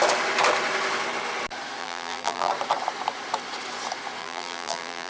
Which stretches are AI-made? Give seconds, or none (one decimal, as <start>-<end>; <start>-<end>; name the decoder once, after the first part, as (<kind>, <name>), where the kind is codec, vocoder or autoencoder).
1.8-2.5 (vocoder, BigVGAN v2); 4.2-5.1